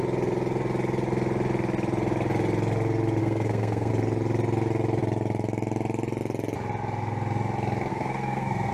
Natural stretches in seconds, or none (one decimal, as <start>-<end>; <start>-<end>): 0.0-3.2; 3.9-7.9